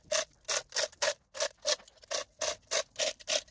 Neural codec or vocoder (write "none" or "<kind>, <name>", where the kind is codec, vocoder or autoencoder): none